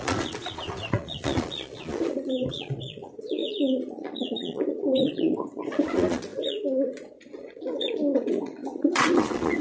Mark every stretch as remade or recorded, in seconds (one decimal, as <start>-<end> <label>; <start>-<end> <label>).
0.0-9.6 remade